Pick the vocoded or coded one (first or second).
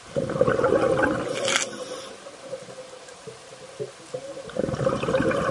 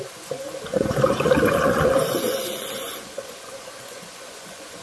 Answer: second